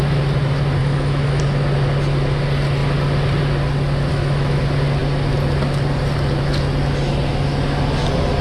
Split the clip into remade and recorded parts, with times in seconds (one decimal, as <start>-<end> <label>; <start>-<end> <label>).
0.0-0.8 recorded; 0.8-1.4 remade; 1.4-4.1 recorded; 4.1-4.6 remade; 4.6-8.4 recorded